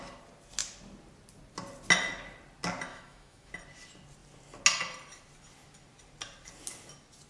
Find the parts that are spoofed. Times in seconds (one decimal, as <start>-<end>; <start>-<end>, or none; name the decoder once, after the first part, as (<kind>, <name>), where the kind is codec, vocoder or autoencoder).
2.9-3.5 (autoencoder, DAC-VAE)

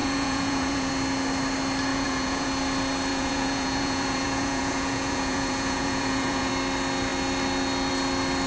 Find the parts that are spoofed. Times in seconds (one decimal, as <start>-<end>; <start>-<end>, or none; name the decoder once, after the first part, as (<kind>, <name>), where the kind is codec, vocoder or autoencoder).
0.0-0.9 (vocoder, Vocos); 1.9-2.5; 3.1-6.5

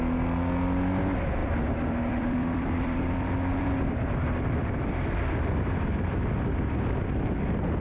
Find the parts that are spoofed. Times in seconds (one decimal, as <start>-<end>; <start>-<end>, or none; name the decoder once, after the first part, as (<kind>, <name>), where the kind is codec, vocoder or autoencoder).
1.4-6.1 (vocoder, BigVGAN v2)

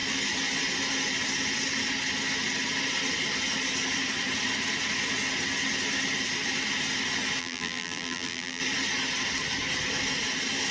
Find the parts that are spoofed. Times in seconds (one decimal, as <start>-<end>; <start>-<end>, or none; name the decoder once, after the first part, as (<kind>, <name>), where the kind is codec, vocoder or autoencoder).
7.4-8.6 (vocoder, BigVGAN v2)

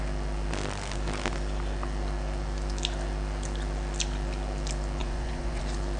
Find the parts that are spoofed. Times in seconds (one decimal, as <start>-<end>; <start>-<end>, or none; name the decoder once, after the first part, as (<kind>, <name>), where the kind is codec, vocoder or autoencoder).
5.0-5.6 (vocoder, Vocos)

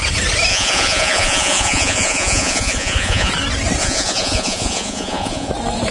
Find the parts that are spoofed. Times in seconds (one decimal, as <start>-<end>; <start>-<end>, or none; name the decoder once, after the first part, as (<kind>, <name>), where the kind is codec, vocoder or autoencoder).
0.5-3.3 (vocoder, Vocos); 3.8-5.5